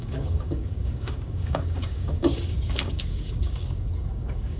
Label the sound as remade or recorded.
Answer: remade